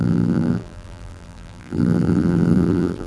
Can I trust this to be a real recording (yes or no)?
no